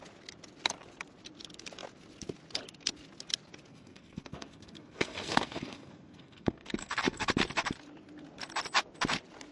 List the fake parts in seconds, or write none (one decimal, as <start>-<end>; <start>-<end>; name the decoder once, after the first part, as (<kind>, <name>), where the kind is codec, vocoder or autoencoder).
3.7-7.3 (codec, SNAC)